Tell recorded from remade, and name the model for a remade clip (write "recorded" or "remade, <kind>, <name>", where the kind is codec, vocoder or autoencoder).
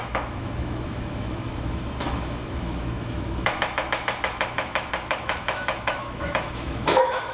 remade, autoencoder, DAC-VAE